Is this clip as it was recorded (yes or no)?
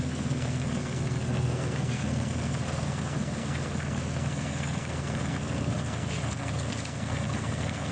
no